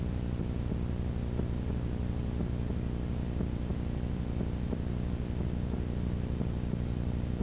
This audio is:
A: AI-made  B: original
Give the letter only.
B